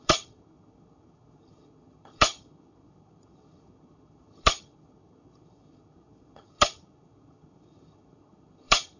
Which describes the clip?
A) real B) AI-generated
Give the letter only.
B